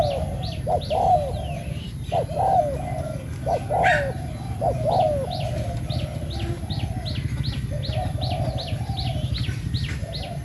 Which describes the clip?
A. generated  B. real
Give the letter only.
B